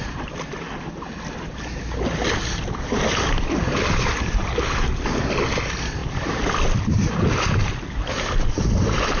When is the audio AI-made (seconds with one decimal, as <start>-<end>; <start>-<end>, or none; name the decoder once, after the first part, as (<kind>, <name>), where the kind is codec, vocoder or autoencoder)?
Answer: none